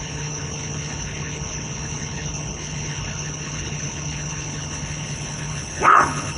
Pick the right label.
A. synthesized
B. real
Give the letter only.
A